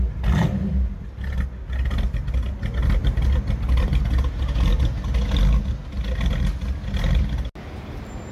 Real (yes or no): yes